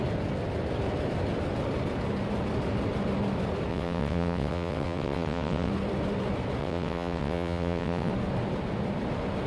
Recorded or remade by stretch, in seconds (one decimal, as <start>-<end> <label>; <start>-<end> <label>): 0.0-3.7 recorded; 3.7-5.7 remade; 5.7-6.6 recorded; 6.6-8.1 remade; 8.1-9.5 recorded